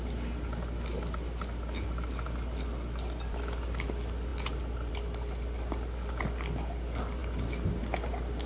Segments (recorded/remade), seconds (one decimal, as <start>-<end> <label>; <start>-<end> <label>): 0.0-8.5 recorded